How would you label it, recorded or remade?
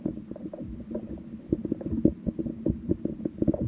recorded